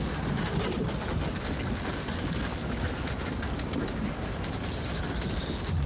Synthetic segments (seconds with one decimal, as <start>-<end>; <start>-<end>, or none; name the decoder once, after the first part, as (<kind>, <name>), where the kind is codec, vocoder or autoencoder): none